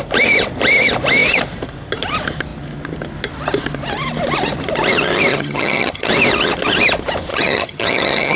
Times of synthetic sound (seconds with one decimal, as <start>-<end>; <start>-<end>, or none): 5.3-6.1; 7.3-8.4